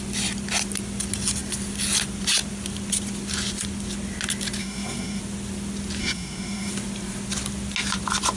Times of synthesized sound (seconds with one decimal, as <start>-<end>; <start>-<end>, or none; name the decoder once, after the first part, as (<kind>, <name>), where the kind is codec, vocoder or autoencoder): 4.6-5.2 (codec, SNAC); 6.0-6.7